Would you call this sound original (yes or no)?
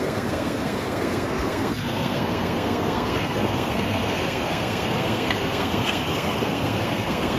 no